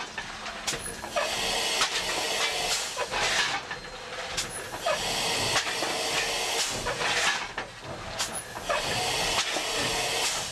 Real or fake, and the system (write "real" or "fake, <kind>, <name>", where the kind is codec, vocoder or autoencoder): real